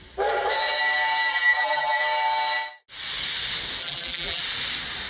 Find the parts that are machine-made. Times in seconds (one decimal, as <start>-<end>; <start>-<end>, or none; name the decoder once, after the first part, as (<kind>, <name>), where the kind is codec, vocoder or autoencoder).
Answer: 1.3-2.0 (vocoder, BigVGAN v2); 3.8-4.4